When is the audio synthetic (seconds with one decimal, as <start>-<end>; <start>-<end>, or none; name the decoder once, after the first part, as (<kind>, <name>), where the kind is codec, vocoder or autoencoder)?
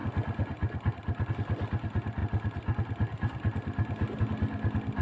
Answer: none